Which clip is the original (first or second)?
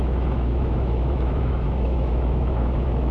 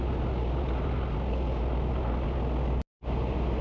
second